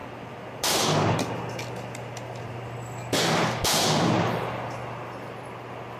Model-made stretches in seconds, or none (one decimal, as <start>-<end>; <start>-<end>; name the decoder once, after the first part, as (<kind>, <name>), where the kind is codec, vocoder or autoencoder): none